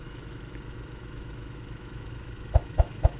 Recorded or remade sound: remade